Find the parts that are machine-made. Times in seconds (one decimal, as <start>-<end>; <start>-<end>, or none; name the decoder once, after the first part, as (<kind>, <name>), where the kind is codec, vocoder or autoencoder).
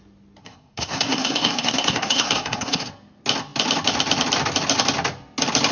0.4-2.9 (codec, SNAC)